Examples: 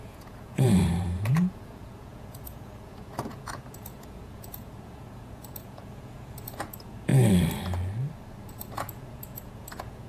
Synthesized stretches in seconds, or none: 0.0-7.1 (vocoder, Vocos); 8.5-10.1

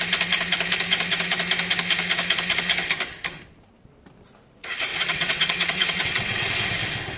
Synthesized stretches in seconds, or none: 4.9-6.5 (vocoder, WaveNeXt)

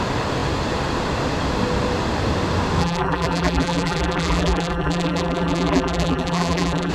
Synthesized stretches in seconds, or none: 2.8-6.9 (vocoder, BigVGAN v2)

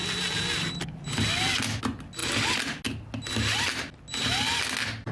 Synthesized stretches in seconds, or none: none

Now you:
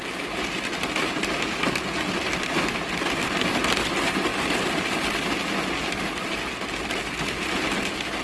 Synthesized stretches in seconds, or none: none

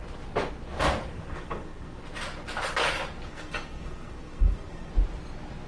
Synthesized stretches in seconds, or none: 1.1-2.0 (codec, SNAC); 3.3-4.9

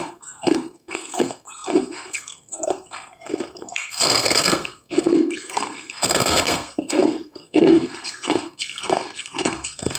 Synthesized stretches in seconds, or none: 0.0-10.0 (codec, SNAC)